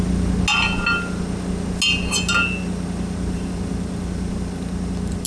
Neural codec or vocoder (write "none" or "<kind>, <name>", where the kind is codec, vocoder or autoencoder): none